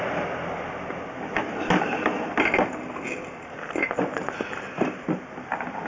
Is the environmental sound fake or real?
real